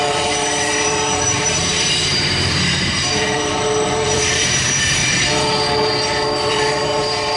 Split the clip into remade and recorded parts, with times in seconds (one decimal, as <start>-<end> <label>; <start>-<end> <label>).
0.0-5.0 remade; 5.0-6.5 recorded; 6.5-7.4 remade